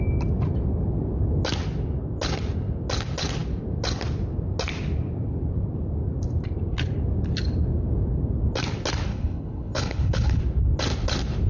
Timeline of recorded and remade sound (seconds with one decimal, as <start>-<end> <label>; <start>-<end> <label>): 0.0-9.1 recorded; 9.1-10.4 remade; 10.4-11.5 recorded